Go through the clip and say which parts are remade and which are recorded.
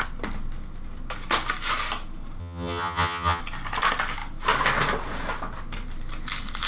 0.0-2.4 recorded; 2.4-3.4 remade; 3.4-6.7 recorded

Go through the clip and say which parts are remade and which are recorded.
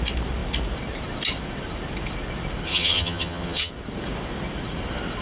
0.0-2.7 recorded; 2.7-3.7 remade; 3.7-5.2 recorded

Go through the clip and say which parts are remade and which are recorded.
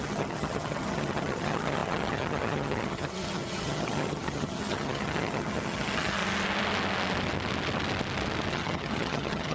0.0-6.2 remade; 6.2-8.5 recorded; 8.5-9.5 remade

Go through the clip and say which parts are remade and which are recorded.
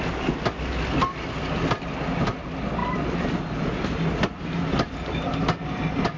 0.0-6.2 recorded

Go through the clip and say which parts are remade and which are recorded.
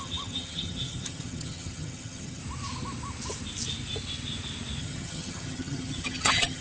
0.0-2.4 remade; 2.4-4.8 recorded; 4.8-6.6 remade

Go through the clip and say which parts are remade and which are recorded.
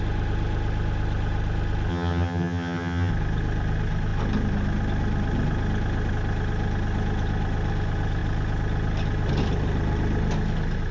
0.0-1.9 recorded; 1.9-3.1 remade; 3.1-10.9 recorded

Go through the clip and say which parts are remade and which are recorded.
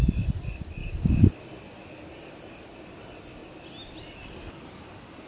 0.0-5.3 recorded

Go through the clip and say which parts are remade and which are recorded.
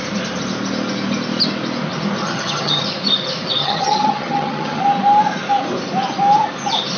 0.0-2.2 recorded; 2.2-2.8 remade; 2.8-3.6 recorded; 3.6-4.8 remade; 4.8-7.0 recorded